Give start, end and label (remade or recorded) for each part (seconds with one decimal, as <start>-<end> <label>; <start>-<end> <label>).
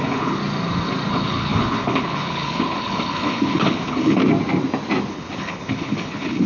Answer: 0.0-0.4 remade; 0.4-1.1 recorded; 1.1-4.2 remade; 4.2-5.1 recorded; 5.1-6.5 remade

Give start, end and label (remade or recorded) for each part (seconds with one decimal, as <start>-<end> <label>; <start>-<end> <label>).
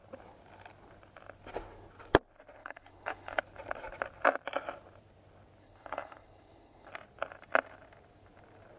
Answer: 0.0-2.6 recorded; 2.6-3.4 remade; 3.4-5.6 recorded; 5.6-6.9 remade; 6.9-8.8 recorded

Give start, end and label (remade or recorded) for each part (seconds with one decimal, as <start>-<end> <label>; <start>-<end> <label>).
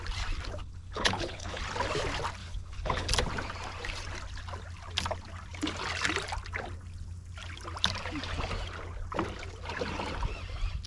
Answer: 0.0-0.6 recorded; 0.6-1.6 remade; 1.6-2.4 recorded; 2.4-3.1 remade; 3.1-10.9 recorded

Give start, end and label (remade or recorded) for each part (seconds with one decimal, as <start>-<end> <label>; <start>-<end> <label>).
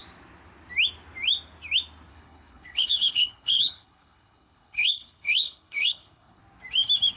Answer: 0.0-2.1 recorded; 2.1-6.4 remade; 6.4-7.2 recorded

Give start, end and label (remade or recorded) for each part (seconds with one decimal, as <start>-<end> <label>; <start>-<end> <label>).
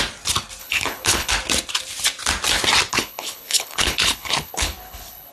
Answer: 0.0-0.6 recorded; 0.6-1.3 remade; 1.3-2.9 recorded; 2.9-5.3 remade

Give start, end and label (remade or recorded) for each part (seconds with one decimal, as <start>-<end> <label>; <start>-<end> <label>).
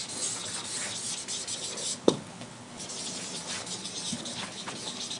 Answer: 0.0-1.9 recorded; 1.9-2.8 remade; 2.8-4.1 recorded; 4.1-4.7 remade; 4.7-5.2 recorded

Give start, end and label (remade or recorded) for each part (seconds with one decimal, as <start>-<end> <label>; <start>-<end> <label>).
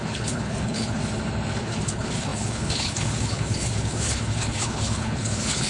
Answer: 0.0-1.0 remade; 1.0-1.6 recorded; 1.6-5.7 remade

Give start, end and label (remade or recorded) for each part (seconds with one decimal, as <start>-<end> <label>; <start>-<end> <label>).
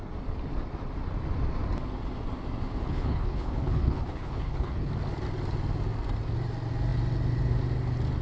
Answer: 0.0-2.8 recorded; 2.8-4.9 remade; 4.9-8.2 recorded